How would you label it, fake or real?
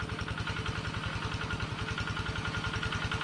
real